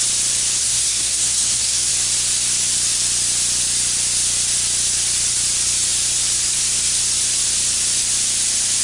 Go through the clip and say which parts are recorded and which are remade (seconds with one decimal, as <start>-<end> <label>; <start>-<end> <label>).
0.0-0.6 recorded; 0.6-1.9 remade; 1.9-8.8 recorded